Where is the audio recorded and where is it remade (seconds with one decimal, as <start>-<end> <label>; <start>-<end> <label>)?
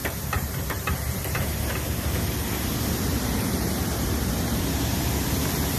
0.0-1.6 remade; 1.6-3.1 recorded; 3.1-4.6 remade; 4.6-5.8 recorded